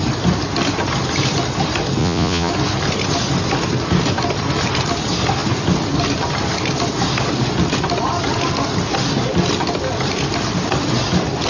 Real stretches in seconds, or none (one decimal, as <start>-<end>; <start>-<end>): 0.0-2.0; 2.5-11.5